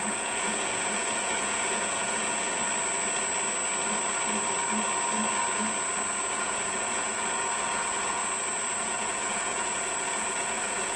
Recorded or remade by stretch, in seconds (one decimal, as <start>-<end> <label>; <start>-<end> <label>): 0.0-2.6 remade; 2.6-6.3 recorded; 6.3-8.2 remade; 8.2-8.8 recorded; 8.8-11.0 remade